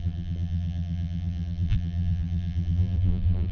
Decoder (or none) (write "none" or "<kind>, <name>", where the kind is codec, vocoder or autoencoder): vocoder, BigVGAN v2